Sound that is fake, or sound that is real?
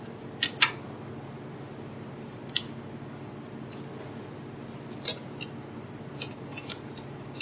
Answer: real